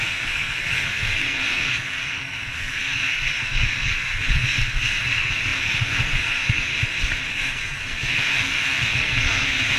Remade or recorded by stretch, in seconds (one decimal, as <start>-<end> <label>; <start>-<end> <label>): 0.0-6.7 remade; 6.7-7.3 recorded; 7.3-9.8 remade